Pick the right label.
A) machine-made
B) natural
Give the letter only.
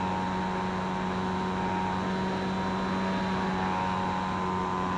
B